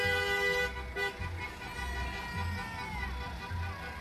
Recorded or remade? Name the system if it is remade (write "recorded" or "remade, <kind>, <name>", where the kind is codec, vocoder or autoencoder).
recorded